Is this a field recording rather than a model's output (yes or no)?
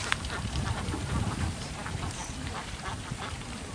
no